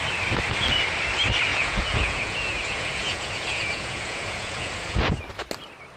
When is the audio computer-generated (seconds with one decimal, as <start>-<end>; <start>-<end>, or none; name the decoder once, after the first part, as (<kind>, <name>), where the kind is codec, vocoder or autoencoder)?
1.5-5.1 (vocoder, Vocos)